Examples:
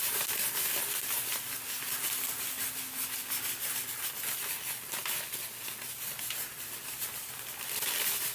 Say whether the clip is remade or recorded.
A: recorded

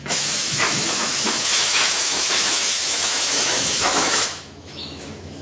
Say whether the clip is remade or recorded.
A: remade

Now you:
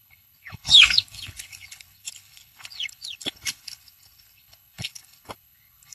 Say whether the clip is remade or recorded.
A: remade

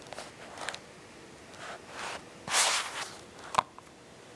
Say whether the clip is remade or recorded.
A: recorded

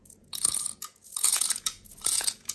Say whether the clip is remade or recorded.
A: remade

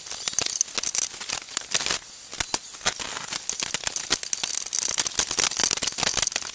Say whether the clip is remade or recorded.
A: recorded